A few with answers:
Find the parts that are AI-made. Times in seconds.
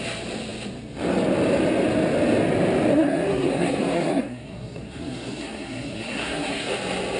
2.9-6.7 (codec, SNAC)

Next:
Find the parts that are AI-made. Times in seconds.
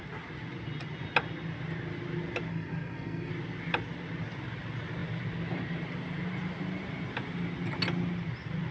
2.5-3.3 (codec, SNAC)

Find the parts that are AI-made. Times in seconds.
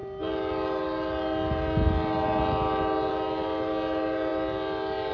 none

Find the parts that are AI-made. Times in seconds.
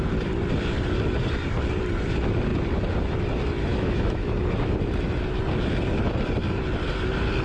3.7-4.3 (autoencoder, DAC-VAE)